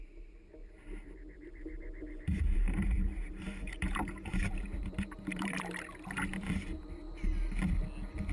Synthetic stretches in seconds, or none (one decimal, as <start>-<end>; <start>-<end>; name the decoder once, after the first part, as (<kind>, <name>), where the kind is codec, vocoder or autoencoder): 0.6-5.6 (vocoder, BigVGAN v2); 6.3-6.8